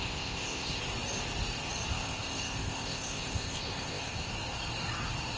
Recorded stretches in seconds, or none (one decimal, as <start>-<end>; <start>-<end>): 0.8-1.9; 4.3-5.4